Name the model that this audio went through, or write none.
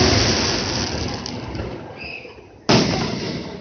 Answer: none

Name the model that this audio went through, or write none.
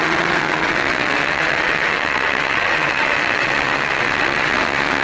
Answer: vocoder, WaveNeXt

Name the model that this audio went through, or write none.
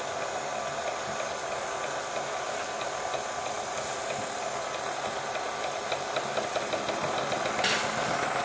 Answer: none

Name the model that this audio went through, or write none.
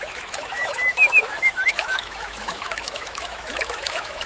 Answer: autoencoder, DAC-VAE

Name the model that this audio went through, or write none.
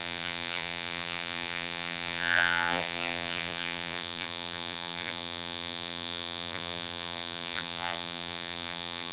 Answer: vocoder, BigVGAN v2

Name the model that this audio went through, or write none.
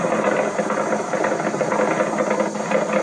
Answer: none